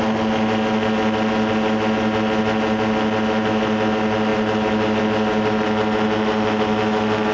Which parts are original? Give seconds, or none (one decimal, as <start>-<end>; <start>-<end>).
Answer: 0.0-7.3